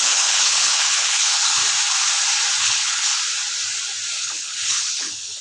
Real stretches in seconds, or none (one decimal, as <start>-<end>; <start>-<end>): 1.6-2.6; 3.1-4.2

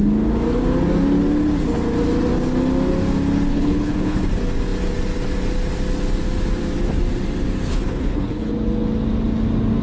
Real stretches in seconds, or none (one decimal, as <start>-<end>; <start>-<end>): 0.0-3.5; 4.2-7.7; 8.5-9.8